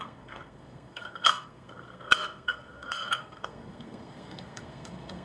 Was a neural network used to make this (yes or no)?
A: yes